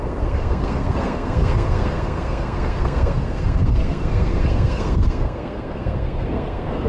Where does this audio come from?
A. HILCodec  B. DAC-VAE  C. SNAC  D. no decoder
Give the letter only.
C